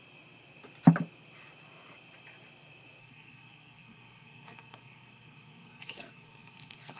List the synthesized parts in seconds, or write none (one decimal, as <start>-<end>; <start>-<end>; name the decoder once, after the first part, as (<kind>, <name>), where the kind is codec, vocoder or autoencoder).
3.0-7.0 (codec, SNAC)